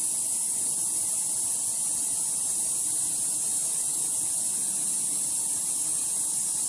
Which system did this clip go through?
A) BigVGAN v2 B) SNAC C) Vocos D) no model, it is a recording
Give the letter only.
D